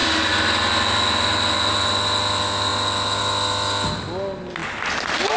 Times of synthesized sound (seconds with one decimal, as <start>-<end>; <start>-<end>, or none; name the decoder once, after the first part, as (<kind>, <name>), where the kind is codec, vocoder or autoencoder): none